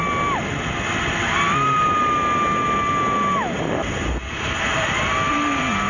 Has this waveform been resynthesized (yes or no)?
no